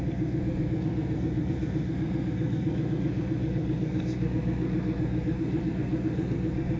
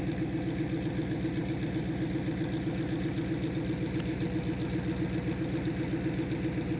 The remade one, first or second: first